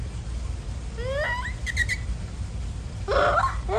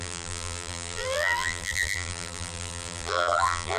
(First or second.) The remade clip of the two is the second